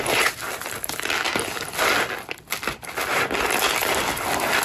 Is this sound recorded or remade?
recorded